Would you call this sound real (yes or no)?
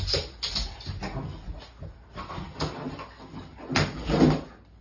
yes